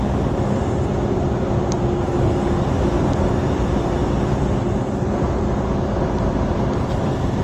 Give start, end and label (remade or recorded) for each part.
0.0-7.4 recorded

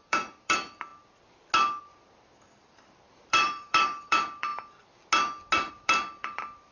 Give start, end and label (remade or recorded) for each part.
0.0-0.9 remade; 0.9-1.8 recorded; 1.8-4.5 remade; 4.5-5.7 recorded; 5.7-6.7 remade

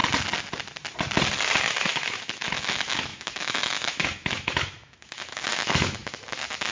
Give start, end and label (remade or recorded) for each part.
0.0-1.6 recorded; 1.6-6.7 remade

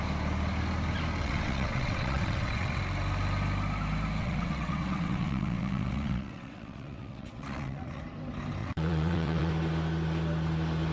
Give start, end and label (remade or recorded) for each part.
0.0-1.2 recorded; 1.2-2.8 remade; 2.8-4.2 recorded; 4.2-8.0 remade; 8.0-8.6 recorded; 8.6-9.5 remade; 9.5-10.9 recorded

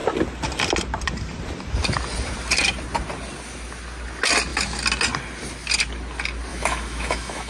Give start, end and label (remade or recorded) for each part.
0.0-6.5 recorded; 6.5-7.5 remade

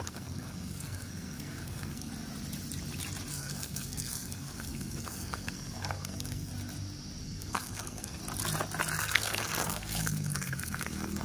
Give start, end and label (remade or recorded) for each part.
0.0-2.1 remade; 2.1-3.3 recorded; 3.3-6.5 remade; 6.5-7.2 recorded; 7.2-8.2 remade; 8.2-9.0 recorded; 9.0-11.2 remade

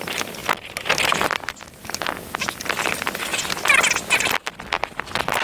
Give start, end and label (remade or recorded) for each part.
0.0-5.4 recorded

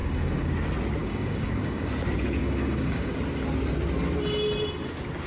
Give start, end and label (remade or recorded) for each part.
0.0-0.5 remade; 0.5-1.0 recorded; 1.0-1.9 remade; 1.9-2.4 recorded; 2.4-3.1 remade; 3.1-5.3 recorded